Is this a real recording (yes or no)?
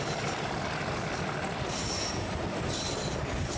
yes